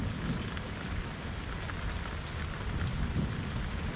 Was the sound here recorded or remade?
recorded